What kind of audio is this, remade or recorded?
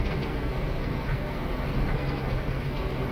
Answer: remade